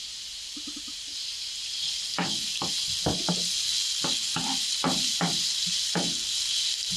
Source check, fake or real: real